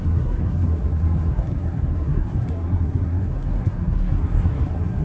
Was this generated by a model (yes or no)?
yes